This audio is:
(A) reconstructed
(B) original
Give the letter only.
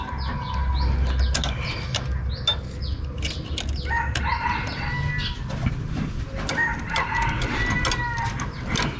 B